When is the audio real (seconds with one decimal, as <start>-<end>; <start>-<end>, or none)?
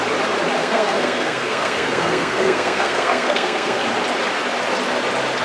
0.0-0.6; 3.8-5.4